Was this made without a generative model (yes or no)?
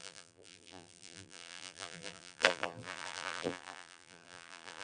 no